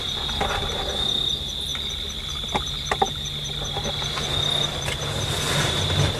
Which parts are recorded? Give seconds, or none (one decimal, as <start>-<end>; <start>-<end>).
0.0-6.2